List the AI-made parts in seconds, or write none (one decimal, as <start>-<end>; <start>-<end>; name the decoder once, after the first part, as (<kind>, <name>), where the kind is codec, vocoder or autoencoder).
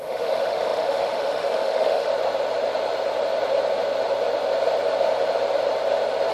0.0-2.1 (autoencoder, DAC-VAE)